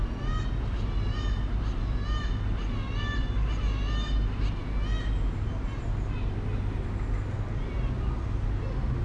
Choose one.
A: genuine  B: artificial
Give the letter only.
A